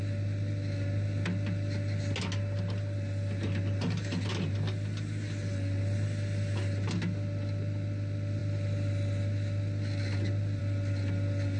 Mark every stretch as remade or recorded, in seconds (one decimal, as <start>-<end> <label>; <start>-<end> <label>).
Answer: 0.0-11.6 recorded